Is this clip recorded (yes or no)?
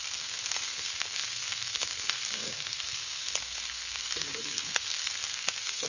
no